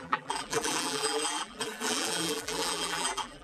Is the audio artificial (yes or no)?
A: yes